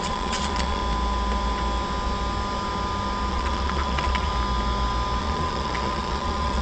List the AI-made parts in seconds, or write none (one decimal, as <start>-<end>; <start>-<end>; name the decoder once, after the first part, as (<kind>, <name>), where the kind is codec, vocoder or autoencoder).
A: 0.0-0.8 (vocoder, Vocos); 3.3-4.3; 5.2-6.6